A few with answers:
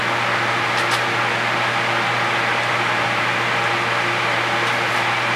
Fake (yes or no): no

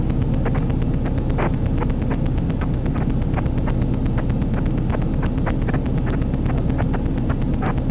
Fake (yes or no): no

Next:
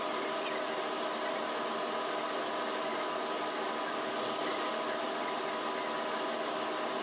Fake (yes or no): no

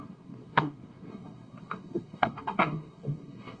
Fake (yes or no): yes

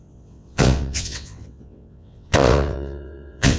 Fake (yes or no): yes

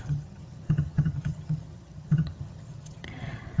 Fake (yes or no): yes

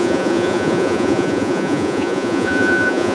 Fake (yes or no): yes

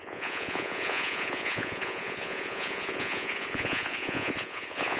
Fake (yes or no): yes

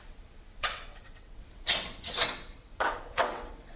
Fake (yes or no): yes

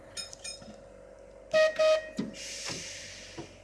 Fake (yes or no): no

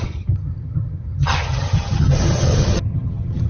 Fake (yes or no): yes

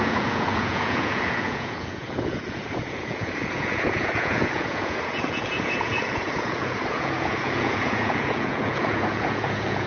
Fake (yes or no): yes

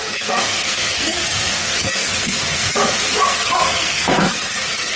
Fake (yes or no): yes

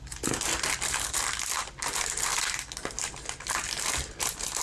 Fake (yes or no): no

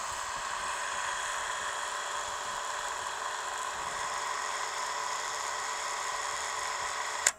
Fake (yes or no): yes